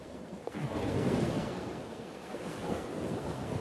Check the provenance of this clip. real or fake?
fake